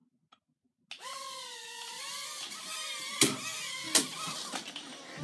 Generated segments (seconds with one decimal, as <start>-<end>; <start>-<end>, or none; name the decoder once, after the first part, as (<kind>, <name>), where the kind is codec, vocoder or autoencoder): none